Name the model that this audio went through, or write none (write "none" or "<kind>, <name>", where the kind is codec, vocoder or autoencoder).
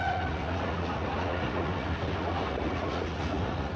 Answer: vocoder, Vocos